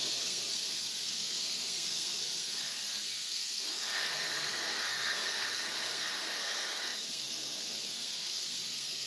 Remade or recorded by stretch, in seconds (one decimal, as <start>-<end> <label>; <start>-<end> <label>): 0.0-9.1 remade